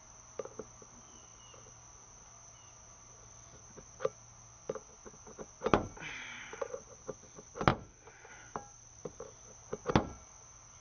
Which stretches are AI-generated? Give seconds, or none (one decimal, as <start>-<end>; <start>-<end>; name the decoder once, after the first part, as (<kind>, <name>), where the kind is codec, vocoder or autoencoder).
none